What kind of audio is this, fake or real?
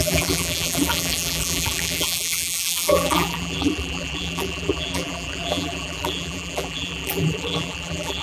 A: fake